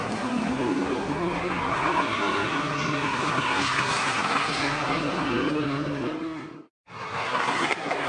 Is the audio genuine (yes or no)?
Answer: no